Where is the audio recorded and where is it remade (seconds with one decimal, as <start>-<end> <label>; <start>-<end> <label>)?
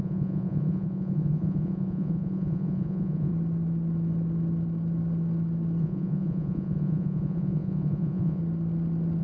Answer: 0.0-3.3 remade; 3.3-5.8 recorded; 5.8-8.4 remade; 8.4-9.2 recorded